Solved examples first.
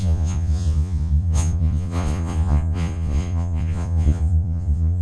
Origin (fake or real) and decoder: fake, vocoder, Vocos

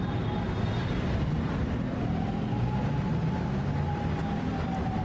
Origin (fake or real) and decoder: real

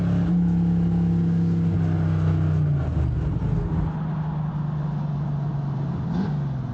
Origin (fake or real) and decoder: real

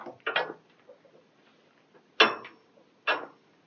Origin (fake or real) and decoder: real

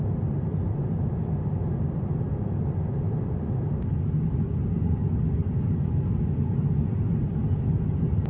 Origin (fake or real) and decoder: real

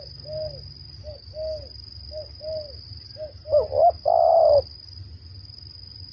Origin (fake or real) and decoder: real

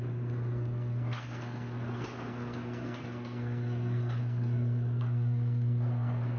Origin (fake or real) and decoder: fake, codec, SNAC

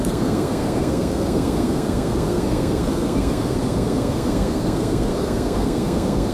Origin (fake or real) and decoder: fake, codec, SNAC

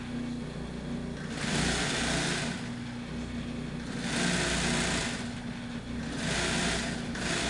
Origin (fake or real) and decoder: real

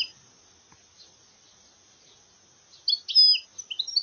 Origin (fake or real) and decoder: real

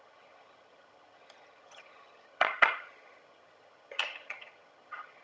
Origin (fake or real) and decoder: fake, vocoder, HiFi-GAN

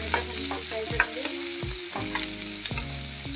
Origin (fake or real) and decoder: real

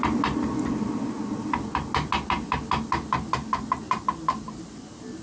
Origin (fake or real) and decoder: real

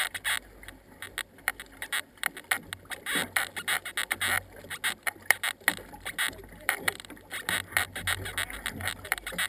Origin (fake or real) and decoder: real